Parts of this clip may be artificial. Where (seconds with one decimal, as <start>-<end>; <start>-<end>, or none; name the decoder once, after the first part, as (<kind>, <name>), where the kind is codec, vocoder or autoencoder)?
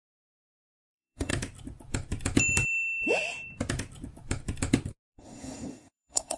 0.0-1.3 (codec, SNAC); 5.1-6.4